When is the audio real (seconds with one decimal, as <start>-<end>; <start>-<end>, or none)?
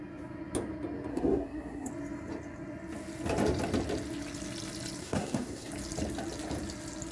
0.0-1.1; 1.9-5.0; 5.7-7.1